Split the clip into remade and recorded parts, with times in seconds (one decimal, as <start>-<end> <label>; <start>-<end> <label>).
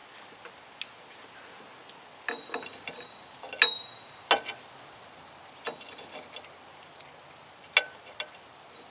0.0-8.9 recorded